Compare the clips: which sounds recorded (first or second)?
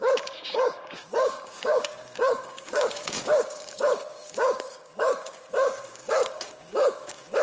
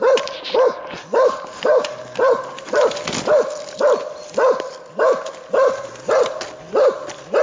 second